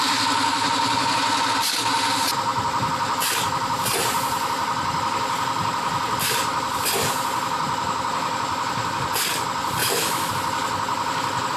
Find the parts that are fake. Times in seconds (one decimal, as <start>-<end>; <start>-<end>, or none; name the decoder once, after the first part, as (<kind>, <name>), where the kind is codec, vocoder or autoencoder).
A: 9.8-10.3 (autoencoder, DAC-VAE)

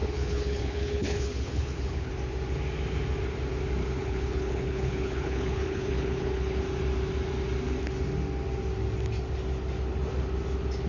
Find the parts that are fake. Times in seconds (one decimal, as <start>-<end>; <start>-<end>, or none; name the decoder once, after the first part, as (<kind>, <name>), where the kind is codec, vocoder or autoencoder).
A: 0.0-2.1 (codec, HILCodec); 3.8-6.6

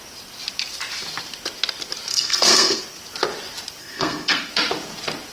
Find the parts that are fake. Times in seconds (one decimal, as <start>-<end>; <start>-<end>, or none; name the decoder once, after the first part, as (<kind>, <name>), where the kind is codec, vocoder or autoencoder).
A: 2.1-2.8 (codec, SNAC); 3.8-4.5

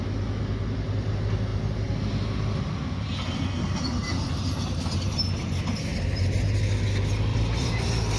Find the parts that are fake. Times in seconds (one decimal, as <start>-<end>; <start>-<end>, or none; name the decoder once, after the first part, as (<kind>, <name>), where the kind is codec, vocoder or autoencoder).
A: 5.9-6.4 (vocoder, BigVGAN v2); 7.3-8.2